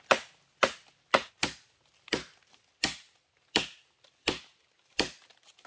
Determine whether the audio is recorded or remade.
recorded